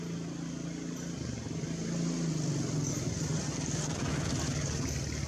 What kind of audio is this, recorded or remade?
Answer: recorded